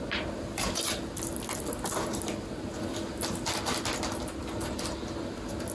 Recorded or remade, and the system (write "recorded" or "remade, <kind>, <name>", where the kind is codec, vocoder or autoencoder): recorded